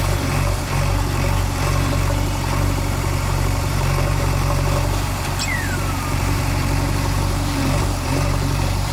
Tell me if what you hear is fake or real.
fake